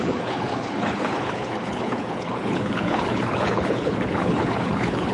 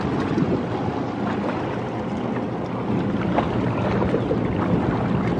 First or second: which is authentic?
second